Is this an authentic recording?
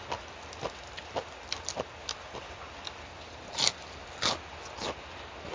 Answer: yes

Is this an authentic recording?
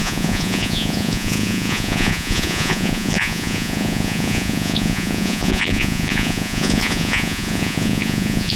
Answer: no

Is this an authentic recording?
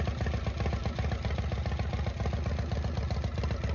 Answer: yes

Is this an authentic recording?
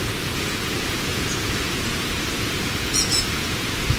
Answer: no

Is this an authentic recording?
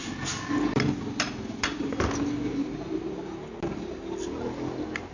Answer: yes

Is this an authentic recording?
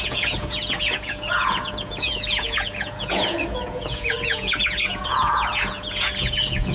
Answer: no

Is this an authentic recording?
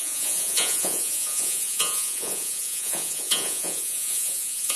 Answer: no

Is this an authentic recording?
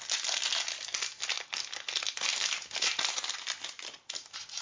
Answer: yes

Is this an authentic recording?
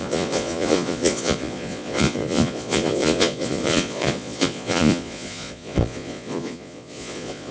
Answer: no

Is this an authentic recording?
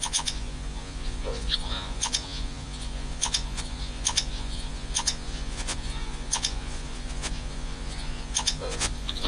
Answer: no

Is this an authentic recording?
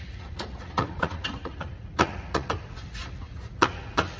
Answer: no